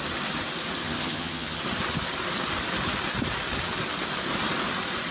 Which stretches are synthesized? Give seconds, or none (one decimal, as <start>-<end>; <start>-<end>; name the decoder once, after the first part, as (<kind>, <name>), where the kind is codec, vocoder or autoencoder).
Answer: 0.8-1.6 (vocoder, HiFi-GAN)